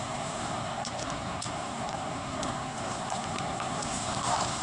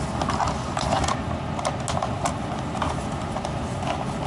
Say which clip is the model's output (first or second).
first